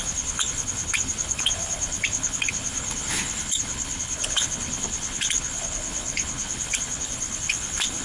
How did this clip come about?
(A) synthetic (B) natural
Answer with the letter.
A